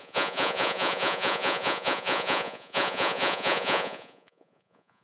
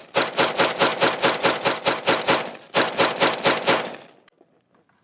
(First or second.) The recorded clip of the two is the second